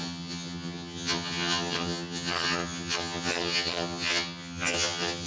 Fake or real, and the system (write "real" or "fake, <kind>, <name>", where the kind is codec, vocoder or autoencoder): fake, vocoder, HiFi-GAN